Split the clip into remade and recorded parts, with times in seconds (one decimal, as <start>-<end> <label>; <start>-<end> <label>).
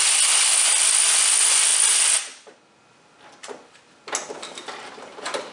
0.0-5.5 recorded